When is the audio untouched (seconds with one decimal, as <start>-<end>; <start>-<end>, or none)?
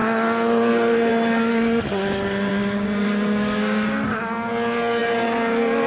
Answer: 0.0-2.5; 4.5-5.9